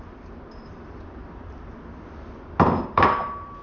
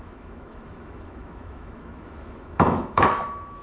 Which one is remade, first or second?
second